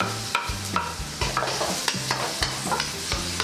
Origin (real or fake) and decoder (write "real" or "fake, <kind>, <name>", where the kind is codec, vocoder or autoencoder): real